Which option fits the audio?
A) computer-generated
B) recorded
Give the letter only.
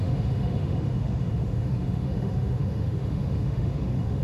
A